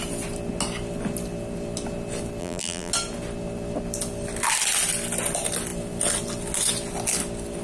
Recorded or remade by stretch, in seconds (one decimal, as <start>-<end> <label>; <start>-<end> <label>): 0.0-2.4 recorded; 2.4-2.9 remade; 2.9-7.6 recorded